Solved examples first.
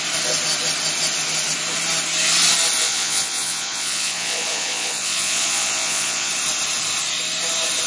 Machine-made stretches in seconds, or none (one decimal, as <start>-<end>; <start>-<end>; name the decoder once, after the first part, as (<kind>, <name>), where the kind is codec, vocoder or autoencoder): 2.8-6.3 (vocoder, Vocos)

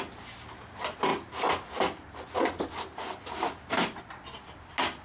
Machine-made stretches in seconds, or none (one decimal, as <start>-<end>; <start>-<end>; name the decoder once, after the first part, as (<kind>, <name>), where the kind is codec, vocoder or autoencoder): none

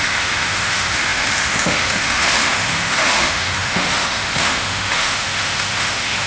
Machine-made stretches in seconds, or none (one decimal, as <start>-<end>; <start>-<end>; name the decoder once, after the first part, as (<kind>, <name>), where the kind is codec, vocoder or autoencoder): 0.0-6.3 (autoencoder, DAC-VAE)

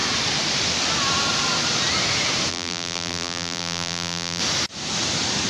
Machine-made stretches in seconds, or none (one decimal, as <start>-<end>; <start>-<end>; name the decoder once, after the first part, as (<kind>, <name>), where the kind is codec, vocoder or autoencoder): 2.5-4.4 (vocoder, BigVGAN v2)

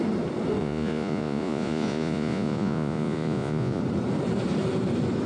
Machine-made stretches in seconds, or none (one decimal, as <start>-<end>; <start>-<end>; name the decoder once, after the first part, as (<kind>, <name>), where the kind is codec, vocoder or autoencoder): 0.6-3.8 (vocoder, Vocos)

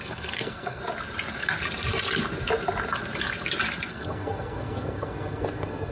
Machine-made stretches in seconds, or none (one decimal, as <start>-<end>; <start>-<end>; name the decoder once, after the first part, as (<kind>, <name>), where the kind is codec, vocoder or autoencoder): 0.0-0.8 (codec, SNAC); 3.9-5.9